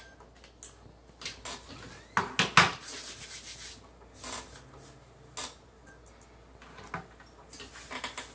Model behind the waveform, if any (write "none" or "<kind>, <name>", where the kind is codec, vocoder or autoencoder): none